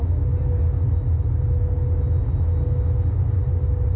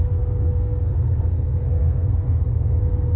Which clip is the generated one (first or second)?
second